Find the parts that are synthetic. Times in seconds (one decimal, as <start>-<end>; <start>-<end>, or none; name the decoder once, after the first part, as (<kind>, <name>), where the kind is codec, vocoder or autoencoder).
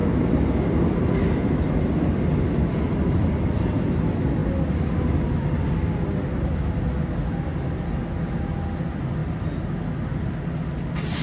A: none